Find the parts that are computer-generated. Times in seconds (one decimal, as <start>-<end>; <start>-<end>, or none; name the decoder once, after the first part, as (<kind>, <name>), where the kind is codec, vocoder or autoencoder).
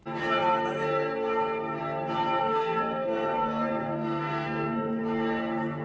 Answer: 2.4-5.0 (codec, SNAC)